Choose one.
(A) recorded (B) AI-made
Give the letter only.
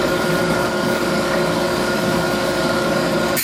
B